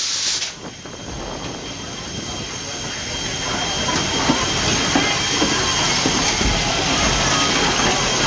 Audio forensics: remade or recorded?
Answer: recorded